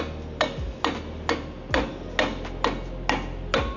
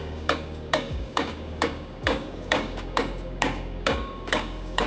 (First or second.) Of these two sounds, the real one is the first